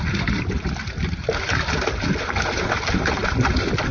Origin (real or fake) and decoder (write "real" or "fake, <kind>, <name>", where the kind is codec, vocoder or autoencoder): real